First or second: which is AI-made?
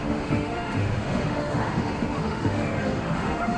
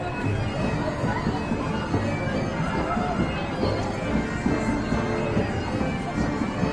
first